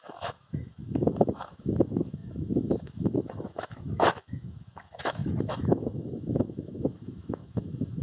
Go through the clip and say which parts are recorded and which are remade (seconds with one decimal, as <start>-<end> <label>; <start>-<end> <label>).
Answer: 0.0-8.0 remade